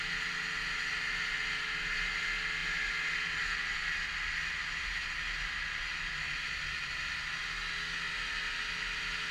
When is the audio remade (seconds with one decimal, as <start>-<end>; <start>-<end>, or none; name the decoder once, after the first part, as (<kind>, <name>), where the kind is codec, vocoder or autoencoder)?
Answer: none